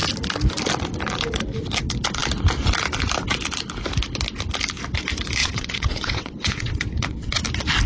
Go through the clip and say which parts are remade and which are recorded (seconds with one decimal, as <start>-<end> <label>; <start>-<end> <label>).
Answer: 0.0-5.4 recorded; 5.4-7.4 remade; 7.4-7.9 recorded